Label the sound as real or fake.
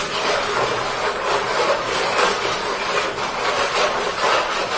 real